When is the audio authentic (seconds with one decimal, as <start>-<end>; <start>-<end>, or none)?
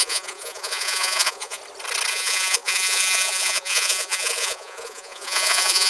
1.6-2.1